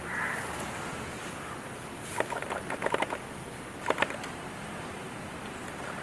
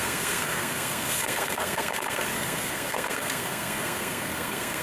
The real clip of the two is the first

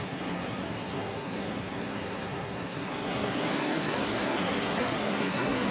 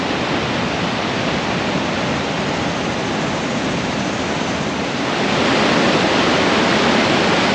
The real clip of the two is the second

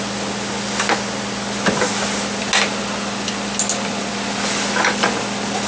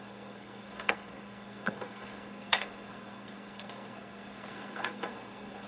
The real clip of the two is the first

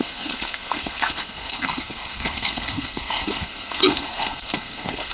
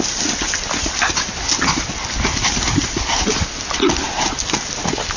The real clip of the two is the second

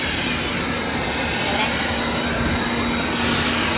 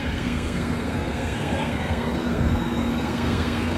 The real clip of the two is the first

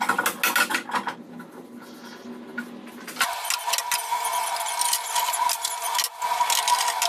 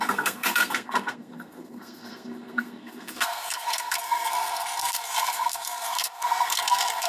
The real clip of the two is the first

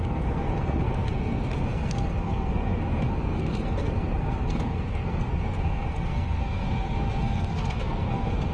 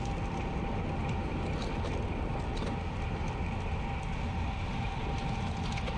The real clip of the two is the second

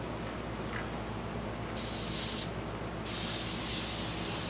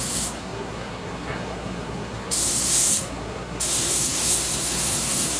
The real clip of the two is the first